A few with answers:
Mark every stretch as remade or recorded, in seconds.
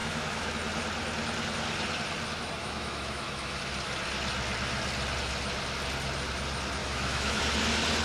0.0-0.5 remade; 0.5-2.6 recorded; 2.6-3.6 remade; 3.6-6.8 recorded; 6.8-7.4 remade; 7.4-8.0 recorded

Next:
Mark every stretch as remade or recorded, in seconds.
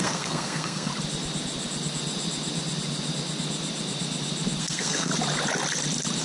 0.0-0.9 remade; 0.9-4.6 recorded; 4.6-5.1 remade; 5.1-6.2 recorded